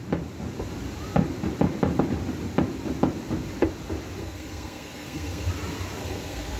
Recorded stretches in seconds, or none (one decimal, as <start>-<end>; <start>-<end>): 0.0-4.2; 5.5-6.0